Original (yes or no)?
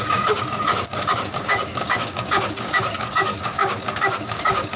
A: no